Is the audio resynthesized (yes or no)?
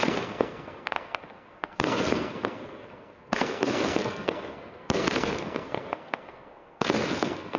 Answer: yes